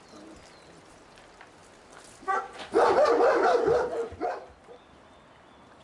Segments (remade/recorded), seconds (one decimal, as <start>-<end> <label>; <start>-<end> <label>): 0.0-5.8 recorded

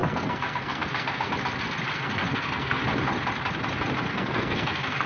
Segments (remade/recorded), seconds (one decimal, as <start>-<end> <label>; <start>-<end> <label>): 0.0-1.3 remade; 1.3-1.9 recorded; 1.9-2.8 remade; 2.8-4.1 recorded; 4.1-5.1 remade

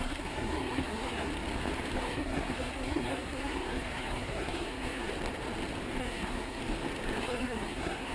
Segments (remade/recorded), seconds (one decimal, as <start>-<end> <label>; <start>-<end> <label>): 0.0-1.3 remade; 1.3-2.0 recorded; 2.0-5.1 remade; 5.1-6.0 recorded; 6.0-6.6 remade; 6.6-7.2 recorded; 7.2-8.1 remade

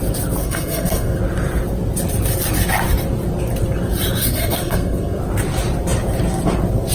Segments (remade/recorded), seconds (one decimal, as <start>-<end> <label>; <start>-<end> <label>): 0.0-0.4 recorded; 0.4-1.2 remade; 1.2-4.2 recorded; 4.2-5.2 remade; 5.2-6.9 recorded

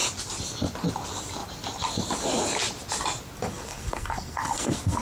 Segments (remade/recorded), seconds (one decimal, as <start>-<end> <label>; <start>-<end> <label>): 0.0-3.5 recorded; 3.5-5.0 remade

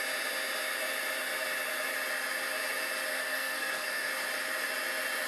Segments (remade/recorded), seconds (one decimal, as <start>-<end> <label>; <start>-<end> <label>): 0.0-3.1 recorded; 3.1-4.1 remade; 4.1-5.3 recorded

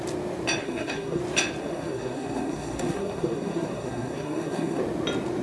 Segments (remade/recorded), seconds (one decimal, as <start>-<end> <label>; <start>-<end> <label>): 0.0-0.6 recorded; 0.6-1.2 remade; 1.2-1.6 recorded; 1.6-4.8 remade; 4.8-5.4 recorded